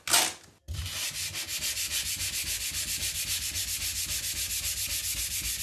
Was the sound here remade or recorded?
recorded